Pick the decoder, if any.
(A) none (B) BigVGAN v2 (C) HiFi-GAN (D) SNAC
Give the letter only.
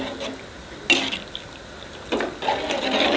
A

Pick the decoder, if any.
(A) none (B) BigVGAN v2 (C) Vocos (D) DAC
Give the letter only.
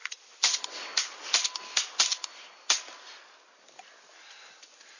A